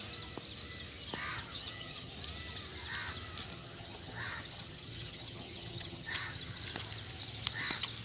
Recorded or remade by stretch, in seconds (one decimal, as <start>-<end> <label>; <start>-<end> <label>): 0.0-1.3 recorded; 1.3-2.1 remade; 2.1-3.5 recorded; 3.5-6.6 remade; 6.6-8.0 recorded